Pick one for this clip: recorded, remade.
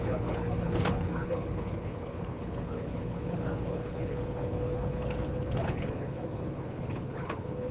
remade